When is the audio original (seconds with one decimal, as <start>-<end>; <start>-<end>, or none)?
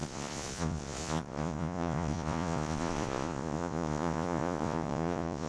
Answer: none